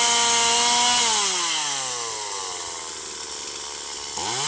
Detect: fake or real real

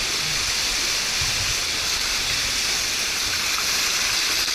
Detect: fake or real real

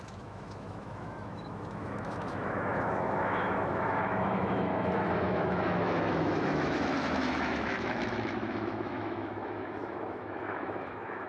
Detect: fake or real fake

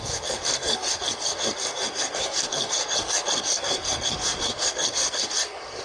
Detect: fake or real fake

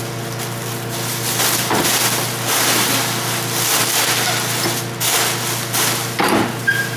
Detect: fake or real real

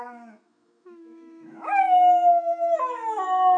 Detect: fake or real fake